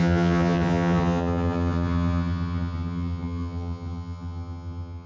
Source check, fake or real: fake